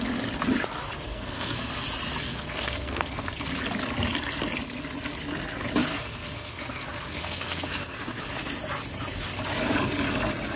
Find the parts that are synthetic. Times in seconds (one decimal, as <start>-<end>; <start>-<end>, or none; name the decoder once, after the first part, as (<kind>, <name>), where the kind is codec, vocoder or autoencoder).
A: 1.1-1.7 (codec, SNAC); 2.3-3.5; 5.9-8.2